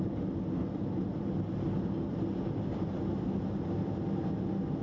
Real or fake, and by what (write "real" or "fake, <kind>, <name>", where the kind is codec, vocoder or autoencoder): real